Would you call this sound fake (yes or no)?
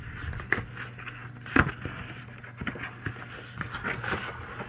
no